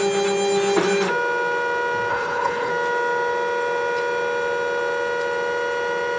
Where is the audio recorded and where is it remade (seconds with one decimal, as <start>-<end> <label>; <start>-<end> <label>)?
0.0-2.1 recorded; 2.1-2.7 remade; 2.7-6.2 recorded